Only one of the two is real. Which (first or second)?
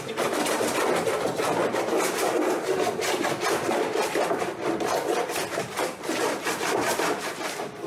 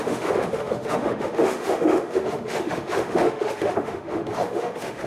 first